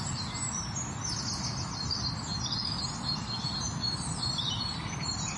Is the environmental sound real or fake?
real